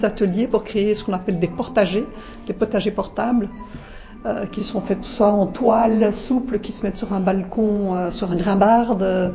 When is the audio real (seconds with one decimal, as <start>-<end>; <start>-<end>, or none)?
0.0-4.6; 8.6-9.3